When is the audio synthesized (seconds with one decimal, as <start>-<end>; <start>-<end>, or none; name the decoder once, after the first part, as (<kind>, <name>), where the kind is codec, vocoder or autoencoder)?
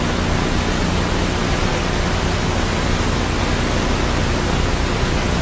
none